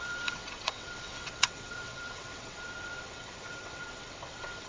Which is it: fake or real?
fake